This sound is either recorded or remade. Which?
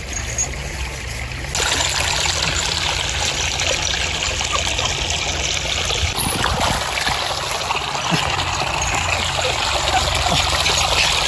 recorded